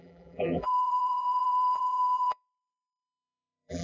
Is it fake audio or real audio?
fake